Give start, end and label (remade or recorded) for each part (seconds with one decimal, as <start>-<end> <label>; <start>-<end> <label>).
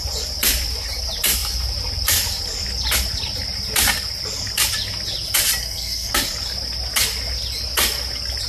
0.0-5.6 recorded; 5.6-6.1 remade; 6.1-8.5 recorded